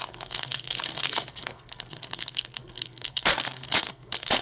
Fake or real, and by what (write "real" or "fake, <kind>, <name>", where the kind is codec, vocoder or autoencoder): fake, codec, SNAC